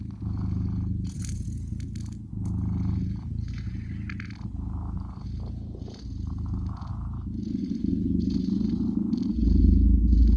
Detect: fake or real real